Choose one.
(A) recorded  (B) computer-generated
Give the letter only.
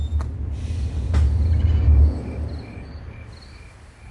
A